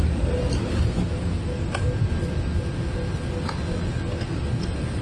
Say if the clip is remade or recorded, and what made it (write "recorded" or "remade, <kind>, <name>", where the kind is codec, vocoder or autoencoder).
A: recorded